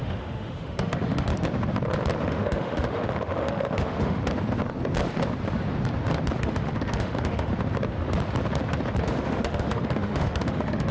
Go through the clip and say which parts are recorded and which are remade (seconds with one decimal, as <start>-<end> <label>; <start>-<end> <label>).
0.0-1.3 remade; 1.3-2.2 recorded; 2.2-4.2 remade; 4.2-6.4 recorded; 6.4-7.5 remade; 7.5-9.0 recorded; 9.0-10.9 remade